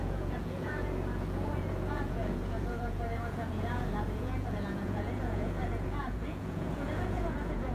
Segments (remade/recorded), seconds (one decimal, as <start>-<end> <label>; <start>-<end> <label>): 0.0-7.7 remade